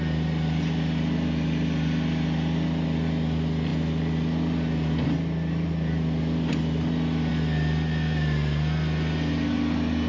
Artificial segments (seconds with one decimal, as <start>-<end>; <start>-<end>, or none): none